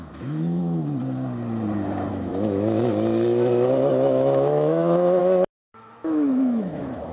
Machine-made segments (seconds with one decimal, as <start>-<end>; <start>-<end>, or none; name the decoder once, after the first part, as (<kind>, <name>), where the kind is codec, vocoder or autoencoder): 0.0-0.8 (autoencoder, DAC-VAE); 2.1-2.8; 3.9-7.1